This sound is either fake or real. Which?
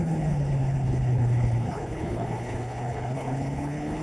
fake